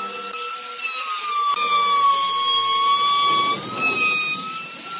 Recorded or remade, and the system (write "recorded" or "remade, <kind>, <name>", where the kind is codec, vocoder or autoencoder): recorded